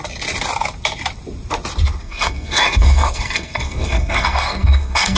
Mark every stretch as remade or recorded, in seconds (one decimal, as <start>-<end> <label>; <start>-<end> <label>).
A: 0.0-2.0 recorded; 2.0-5.2 remade